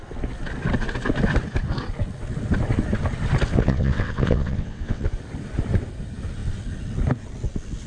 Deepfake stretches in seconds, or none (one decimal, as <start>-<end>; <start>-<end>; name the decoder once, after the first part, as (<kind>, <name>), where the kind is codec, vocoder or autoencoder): 3.5-5.1 (vocoder, WaveNeXt)